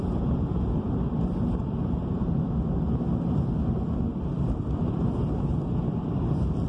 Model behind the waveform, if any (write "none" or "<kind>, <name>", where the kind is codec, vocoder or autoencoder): vocoder, BigVGAN v2